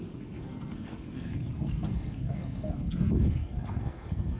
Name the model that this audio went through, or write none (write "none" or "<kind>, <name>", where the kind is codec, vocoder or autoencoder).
codec, SNAC